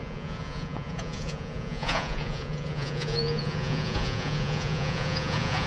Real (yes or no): no